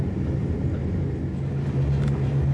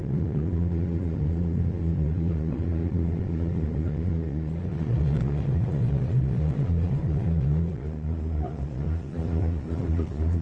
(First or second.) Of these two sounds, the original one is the first